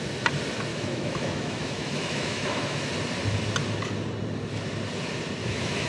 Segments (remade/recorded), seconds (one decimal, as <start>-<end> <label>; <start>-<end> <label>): 0.0-0.7 recorded; 0.7-2.9 remade; 2.9-5.4 recorded; 5.4-5.9 remade